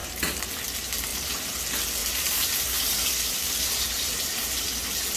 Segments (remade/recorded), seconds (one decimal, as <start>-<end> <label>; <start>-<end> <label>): 0.0-0.5 remade; 0.5-1.1 recorded; 1.1-1.6 remade; 1.6-2.0 recorded; 2.0-4.8 remade; 4.8-5.2 recorded